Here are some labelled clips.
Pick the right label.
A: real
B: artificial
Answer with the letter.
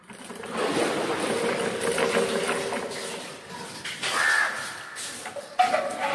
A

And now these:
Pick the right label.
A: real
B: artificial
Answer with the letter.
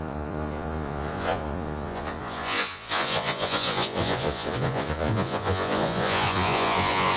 B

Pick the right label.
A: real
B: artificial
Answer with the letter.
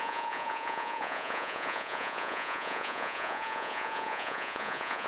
B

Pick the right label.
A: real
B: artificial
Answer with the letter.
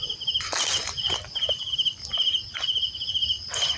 A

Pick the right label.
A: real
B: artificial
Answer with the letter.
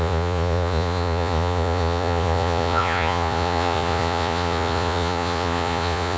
B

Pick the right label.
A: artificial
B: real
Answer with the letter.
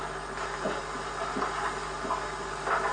B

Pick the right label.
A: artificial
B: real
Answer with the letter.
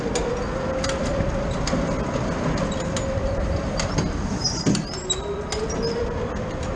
B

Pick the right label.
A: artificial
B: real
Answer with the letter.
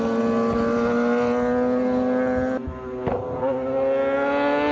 B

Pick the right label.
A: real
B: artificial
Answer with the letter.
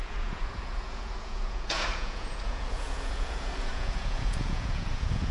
B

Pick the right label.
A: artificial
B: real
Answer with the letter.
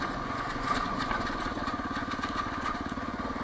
A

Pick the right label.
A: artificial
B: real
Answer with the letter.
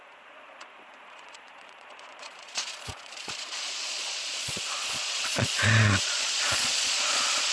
A